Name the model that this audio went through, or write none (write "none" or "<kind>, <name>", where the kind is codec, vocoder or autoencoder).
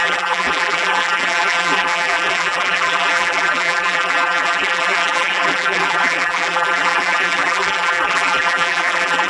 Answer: vocoder, BigVGAN v2